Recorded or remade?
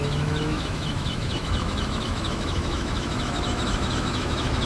remade